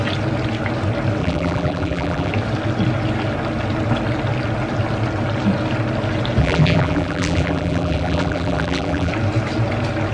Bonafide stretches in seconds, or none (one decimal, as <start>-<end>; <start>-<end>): 0.0-1.2; 2.3-6.4; 9.1-10.1